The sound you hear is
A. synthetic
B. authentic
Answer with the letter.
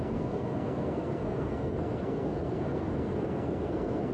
A